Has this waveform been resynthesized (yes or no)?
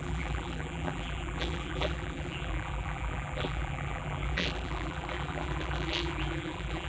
yes